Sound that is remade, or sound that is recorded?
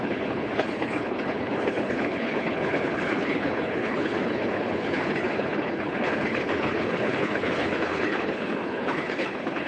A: remade